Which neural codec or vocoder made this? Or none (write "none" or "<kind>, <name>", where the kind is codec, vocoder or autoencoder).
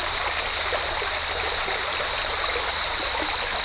none